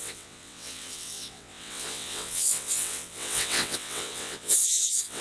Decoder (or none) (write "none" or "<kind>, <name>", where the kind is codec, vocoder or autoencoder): vocoder, WaveNeXt